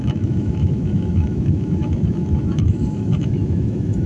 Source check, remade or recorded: remade